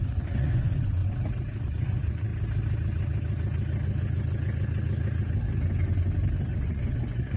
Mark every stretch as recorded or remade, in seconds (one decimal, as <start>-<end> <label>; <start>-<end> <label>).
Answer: 0.0-1.0 remade; 1.0-1.6 recorded; 1.6-2.3 remade; 2.3-6.6 recorded; 6.6-7.4 remade